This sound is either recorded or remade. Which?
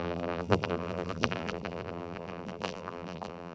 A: remade